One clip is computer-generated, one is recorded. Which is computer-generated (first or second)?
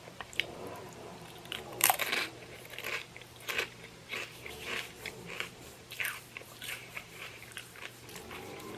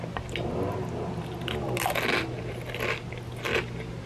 first